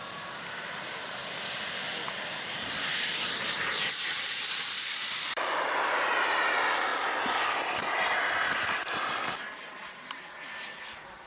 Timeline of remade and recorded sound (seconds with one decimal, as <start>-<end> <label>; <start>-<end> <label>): 0.0-1.2 recorded; 1.2-6.0 remade; 6.0-11.3 recorded